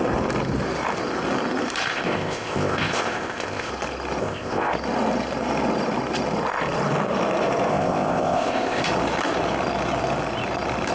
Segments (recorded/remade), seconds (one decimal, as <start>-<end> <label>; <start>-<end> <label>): 0.0-1.9 recorded; 1.9-3.7 remade; 3.7-4.2 recorded; 4.2-4.7 remade; 4.7-7.7 recorded; 7.7-8.8 remade; 8.8-10.9 recorded